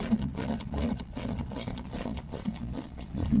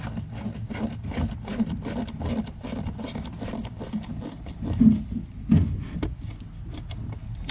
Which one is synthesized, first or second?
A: first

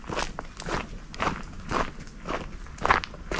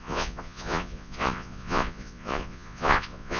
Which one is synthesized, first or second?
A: second